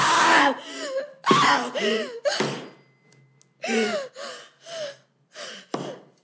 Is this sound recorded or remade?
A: recorded